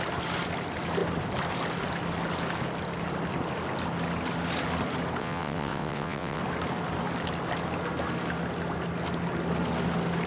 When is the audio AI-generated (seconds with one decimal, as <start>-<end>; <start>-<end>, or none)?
5.2-6.4